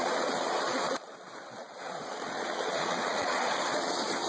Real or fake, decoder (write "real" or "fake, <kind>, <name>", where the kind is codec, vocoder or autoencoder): fake, vocoder, Vocos